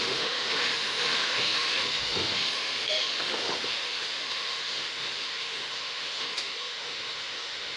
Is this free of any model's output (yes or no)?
no